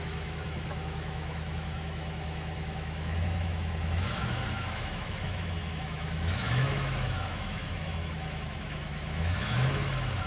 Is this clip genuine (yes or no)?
no